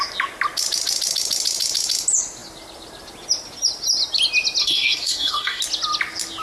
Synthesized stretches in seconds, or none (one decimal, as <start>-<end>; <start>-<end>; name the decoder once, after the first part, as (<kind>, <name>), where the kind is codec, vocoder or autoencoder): 4.6-5.6 (codec, SNAC)